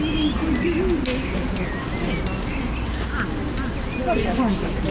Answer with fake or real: real